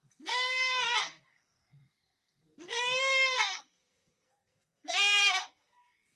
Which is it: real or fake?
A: fake